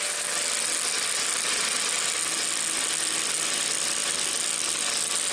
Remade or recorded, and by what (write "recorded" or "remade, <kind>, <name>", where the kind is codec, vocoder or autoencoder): recorded